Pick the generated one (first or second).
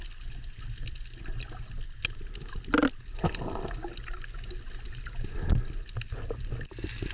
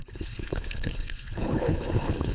second